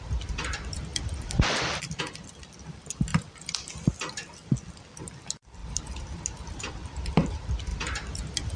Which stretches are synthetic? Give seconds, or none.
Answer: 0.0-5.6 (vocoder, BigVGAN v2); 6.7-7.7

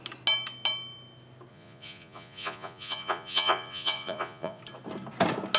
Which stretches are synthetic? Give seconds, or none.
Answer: 1.5-4.6 (vocoder, Vocos)

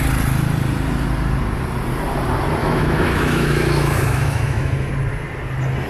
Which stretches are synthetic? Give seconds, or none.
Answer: 2.6-4.9 (autoencoder, DAC-VAE)

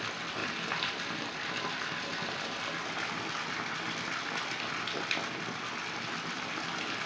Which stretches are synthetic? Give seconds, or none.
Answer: none